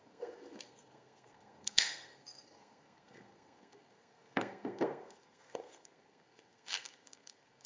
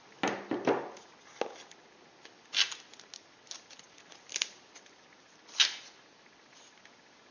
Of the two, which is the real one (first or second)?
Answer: second